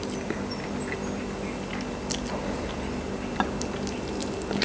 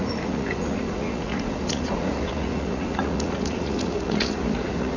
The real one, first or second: first